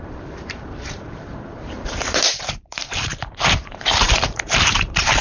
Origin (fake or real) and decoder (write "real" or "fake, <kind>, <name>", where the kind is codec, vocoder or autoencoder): fake, vocoder, BigVGAN v2